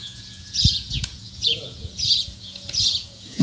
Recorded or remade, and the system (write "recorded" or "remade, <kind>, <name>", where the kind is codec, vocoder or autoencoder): remade, vocoder, Vocos